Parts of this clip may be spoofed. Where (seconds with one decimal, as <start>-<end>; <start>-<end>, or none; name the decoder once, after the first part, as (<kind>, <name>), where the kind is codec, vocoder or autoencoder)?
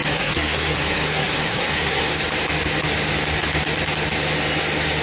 0.0-2.1 (codec, SNAC)